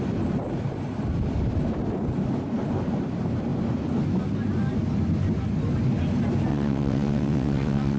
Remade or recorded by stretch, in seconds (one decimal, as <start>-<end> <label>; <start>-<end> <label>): 0.0-6.5 recorded; 6.5-8.0 remade

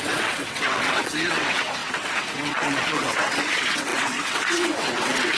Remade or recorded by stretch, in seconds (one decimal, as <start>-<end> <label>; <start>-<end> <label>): 0.0-5.4 remade